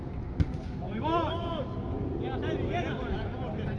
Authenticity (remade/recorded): recorded